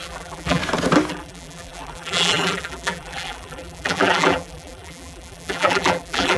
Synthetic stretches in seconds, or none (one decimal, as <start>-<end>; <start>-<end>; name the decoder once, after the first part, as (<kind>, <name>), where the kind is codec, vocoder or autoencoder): 0.0-0.6 (vocoder, BigVGAN v2); 1.1-6.4